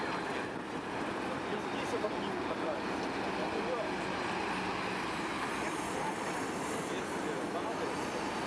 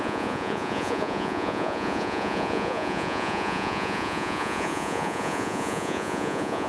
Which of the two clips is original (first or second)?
first